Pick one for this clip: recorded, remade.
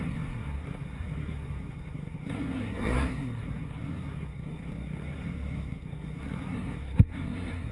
remade